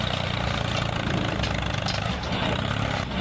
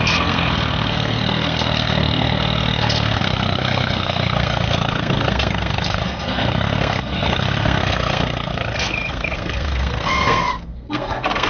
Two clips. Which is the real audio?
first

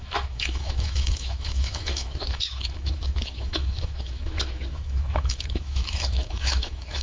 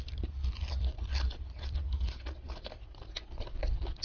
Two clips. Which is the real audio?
second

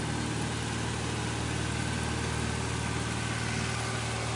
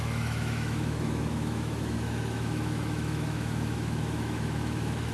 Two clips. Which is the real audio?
first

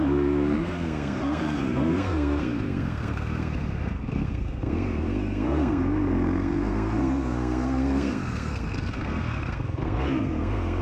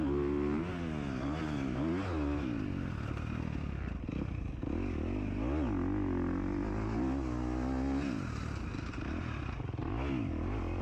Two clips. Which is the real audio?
second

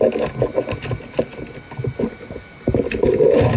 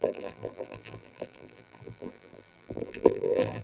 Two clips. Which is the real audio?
first